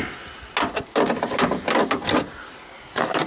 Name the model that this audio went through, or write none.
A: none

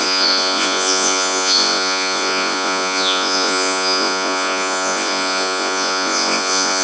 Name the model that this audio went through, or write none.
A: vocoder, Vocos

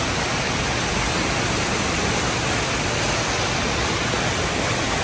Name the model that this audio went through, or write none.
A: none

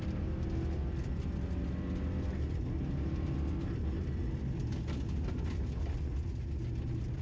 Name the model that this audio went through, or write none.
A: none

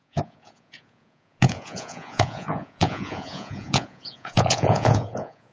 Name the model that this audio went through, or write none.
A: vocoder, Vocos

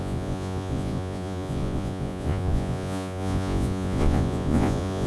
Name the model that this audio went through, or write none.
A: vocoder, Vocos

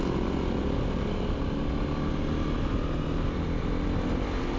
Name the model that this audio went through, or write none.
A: none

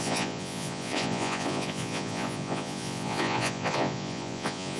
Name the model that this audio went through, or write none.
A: vocoder, Vocos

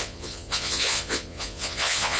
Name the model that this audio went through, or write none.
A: vocoder, Vocos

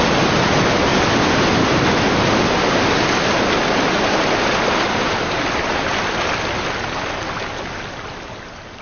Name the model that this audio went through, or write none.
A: none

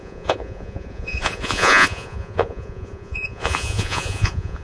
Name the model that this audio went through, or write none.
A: vocoder, Vocos